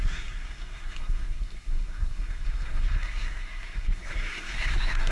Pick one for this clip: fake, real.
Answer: fake